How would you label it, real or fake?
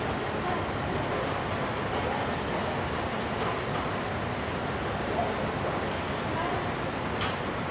real